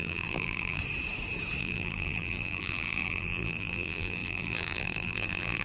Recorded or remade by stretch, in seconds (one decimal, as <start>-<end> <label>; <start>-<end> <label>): 0.0-0.8 remade; 0.8-1.6 recorded; 1.6-5.6 remade